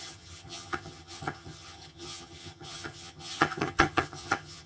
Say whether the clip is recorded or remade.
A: remade